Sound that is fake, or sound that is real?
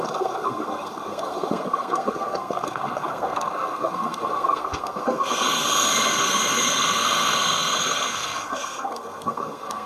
fake